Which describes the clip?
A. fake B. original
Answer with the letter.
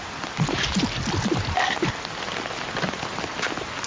B